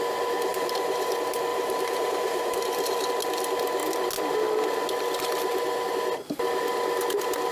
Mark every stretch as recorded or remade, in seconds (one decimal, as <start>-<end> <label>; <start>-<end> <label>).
0.0-0.5 recorded; 0.5-1.1 remade; 1.1-1.5 recorded; 1.5-3.1 remade; 3.1-7.5 recorded